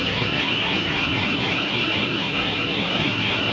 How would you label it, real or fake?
fake